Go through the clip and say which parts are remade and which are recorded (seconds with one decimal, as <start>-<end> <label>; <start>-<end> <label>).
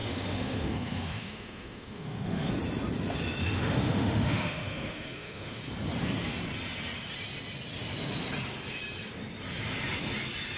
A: 0.0-2.5 remade; 2.5-3.4 recorded; 3.4-5.6 remade; 5.6-10.6 recorded